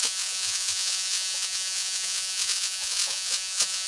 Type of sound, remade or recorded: remade